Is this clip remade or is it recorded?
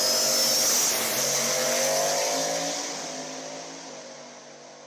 recorded